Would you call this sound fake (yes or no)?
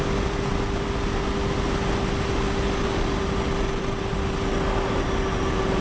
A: no